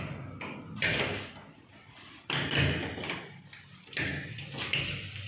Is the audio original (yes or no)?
yes